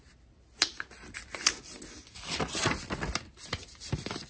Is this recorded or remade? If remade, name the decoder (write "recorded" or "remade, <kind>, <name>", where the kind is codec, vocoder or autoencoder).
recorded